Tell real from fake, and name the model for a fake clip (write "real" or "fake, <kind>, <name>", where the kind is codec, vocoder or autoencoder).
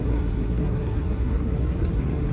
fake, codec, SNAC